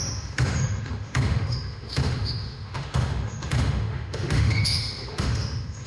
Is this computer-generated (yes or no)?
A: yes